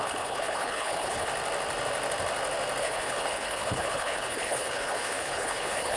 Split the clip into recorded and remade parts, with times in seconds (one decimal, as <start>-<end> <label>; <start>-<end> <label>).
0.0-1.3 remade; 1.3-2.8 recorded; 2.8-6.0 remade